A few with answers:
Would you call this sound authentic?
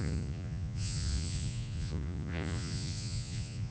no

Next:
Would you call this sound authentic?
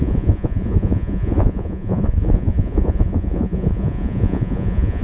no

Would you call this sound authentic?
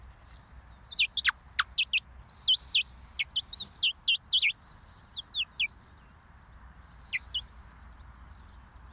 yes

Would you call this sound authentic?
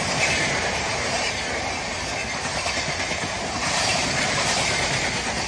no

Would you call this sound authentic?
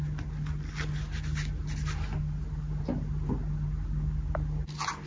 yes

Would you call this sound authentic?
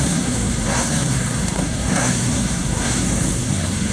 no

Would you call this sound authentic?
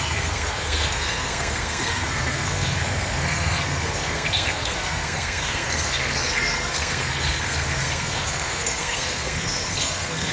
no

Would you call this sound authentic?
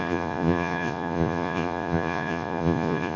no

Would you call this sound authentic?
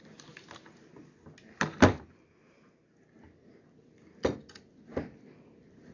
yes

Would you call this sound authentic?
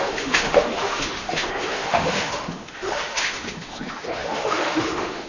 no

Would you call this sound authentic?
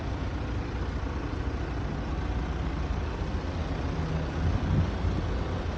yes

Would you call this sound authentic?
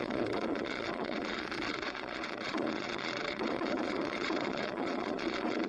no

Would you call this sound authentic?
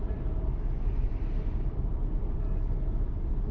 no